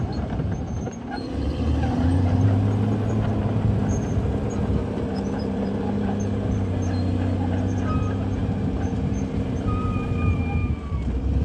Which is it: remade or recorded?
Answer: remade